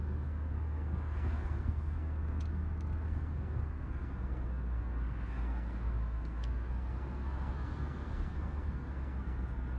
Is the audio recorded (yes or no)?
no